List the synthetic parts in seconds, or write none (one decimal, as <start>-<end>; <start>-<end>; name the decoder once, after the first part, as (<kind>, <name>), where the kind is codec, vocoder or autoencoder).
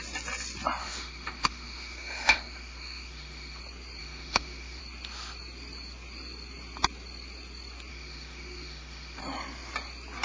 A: 0.8-3.6 (autoencoder, DAC-VAE); 4.0-4.8; 7.9-9.2